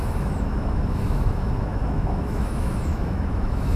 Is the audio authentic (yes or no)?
no